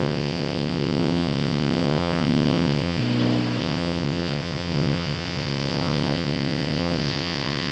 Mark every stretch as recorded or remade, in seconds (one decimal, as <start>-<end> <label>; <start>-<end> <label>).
0.0-3.0 remade; 3.0-3.6 recorded; 3.6-7.7 remade